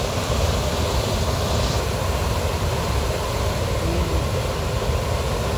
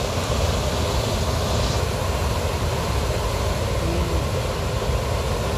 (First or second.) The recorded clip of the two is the second